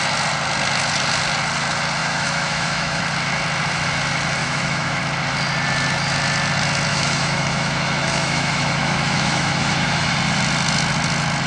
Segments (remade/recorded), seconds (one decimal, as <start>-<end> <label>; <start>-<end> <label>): 0.0-2.0 recorded; 2.0-3.0 remade; 3.0-4.4 recorded; 4.4-5.0 remade; 5.0-6.9 recorded; 6.9-10.1 remade; 10.1-11.5 recorded